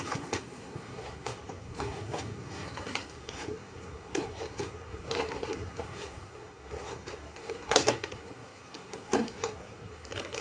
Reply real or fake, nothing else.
fake